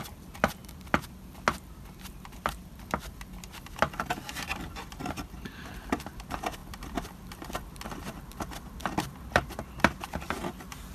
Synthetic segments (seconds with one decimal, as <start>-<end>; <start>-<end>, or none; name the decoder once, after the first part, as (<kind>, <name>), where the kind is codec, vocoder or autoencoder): 0.0-0.6 (vocoder, BigVGAN v2); 2.1-10.9